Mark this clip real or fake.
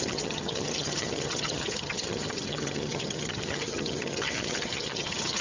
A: fake